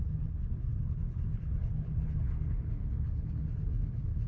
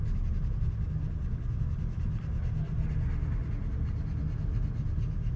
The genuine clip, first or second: second